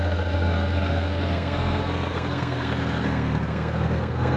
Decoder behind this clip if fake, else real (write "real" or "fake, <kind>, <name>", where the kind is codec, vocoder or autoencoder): fake, codec, SNAC